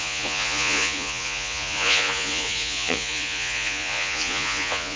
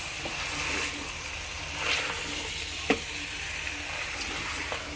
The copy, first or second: first